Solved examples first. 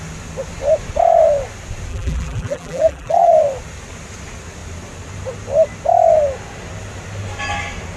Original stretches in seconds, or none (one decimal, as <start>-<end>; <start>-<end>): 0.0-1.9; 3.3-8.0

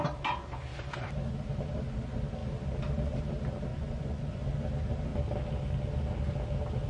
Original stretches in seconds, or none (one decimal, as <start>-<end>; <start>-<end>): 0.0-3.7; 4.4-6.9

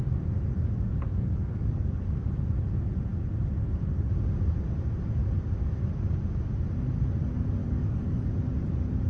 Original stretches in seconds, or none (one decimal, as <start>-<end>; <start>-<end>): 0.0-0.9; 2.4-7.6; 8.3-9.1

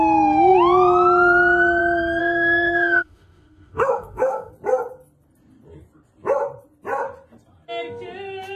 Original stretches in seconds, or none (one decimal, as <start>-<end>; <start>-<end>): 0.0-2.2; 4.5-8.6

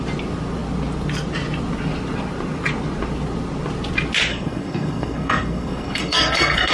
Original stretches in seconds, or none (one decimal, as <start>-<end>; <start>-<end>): 0.0-4.3

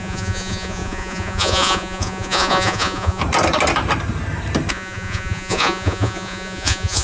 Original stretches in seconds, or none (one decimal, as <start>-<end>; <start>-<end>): 3.2-4.7